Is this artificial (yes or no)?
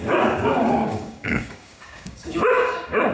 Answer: yes